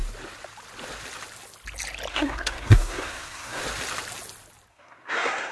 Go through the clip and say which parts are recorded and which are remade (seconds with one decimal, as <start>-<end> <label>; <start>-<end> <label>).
0.0-2.1 recorded; 2.1-3.6 remade; 3.6-4.7 recorded; 4.7-5.5 remade